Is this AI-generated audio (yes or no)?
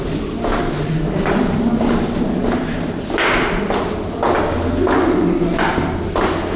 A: no